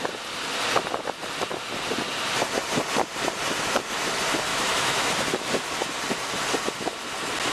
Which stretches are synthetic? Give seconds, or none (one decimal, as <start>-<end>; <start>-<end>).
4.5-5.1